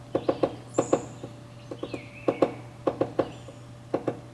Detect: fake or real real